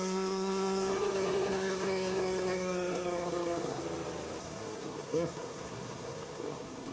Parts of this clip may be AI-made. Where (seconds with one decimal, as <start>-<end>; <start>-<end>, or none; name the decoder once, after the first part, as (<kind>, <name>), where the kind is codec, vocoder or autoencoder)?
0.0-3.8 (codec, SNAC); 4.4-6.9